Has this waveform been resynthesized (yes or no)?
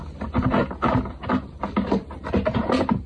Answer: no